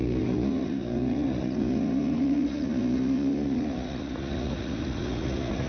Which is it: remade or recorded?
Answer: remade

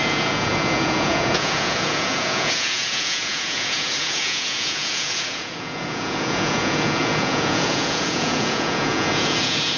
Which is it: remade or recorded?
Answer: remade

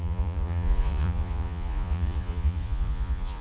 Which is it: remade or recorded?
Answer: remade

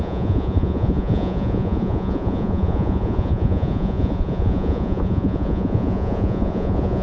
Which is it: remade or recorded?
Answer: remade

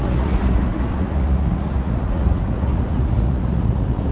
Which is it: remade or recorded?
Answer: remade